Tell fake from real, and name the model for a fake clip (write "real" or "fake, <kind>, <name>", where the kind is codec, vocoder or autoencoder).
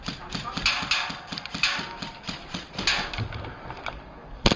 real